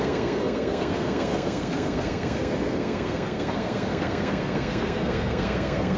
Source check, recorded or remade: remade